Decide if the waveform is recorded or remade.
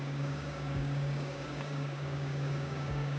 remade